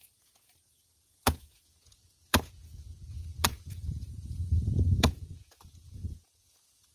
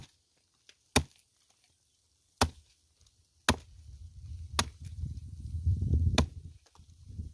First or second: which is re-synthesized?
first